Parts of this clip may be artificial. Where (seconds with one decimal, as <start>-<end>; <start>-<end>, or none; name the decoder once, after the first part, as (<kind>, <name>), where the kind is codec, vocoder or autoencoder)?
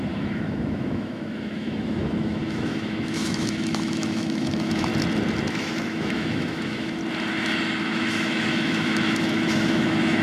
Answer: 0.0-4.9 (autoencoder, DAC-VAE); 5.5-7.0; 7.8-10.2